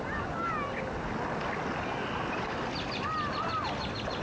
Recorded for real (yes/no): yes